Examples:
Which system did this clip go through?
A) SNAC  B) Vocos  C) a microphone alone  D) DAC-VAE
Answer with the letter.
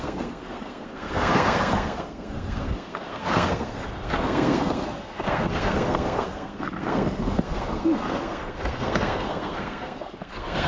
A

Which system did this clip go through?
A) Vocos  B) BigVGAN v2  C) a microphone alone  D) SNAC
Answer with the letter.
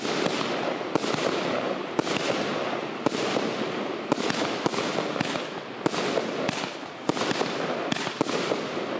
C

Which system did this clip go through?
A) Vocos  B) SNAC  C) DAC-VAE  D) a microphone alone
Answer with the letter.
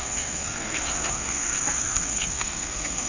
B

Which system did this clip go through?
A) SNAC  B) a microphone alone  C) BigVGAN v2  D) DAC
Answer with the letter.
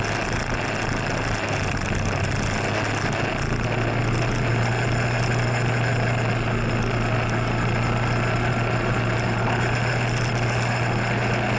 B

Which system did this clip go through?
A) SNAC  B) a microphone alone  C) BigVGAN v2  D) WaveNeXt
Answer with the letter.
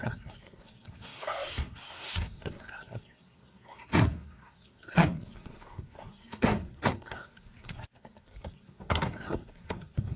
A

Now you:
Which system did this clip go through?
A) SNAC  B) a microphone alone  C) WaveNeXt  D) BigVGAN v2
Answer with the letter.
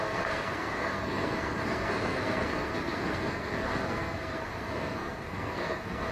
A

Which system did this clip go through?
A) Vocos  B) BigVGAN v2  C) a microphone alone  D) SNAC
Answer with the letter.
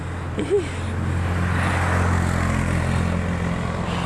C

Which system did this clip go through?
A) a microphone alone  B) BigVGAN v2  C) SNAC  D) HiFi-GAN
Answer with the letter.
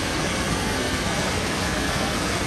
C